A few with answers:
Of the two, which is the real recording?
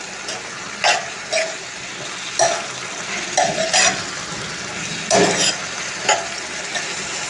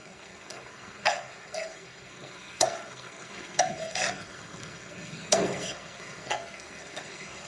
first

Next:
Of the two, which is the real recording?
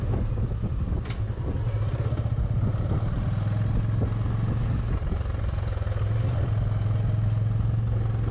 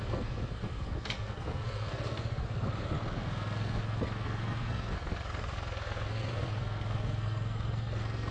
first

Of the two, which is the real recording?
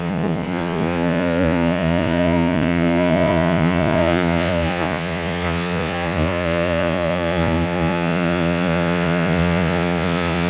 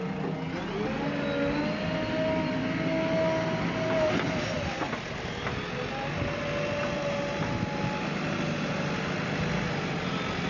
second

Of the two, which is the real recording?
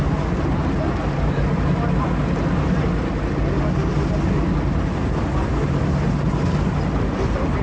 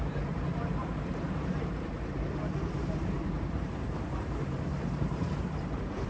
first